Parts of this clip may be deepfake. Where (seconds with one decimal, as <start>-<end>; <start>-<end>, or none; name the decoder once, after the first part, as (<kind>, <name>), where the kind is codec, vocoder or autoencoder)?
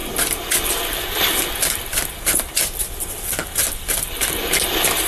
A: none